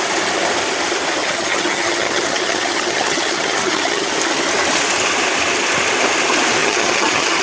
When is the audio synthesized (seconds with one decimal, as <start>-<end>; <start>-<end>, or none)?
1.2-4.1; 6.6-7.4